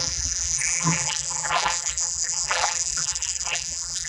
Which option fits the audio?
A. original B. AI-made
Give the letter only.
B